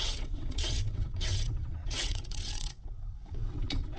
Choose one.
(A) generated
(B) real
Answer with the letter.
A